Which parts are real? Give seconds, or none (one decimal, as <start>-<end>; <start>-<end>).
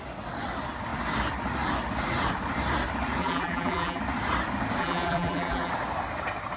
0.0-3.2; 4.0-4.8; 5.7-6.6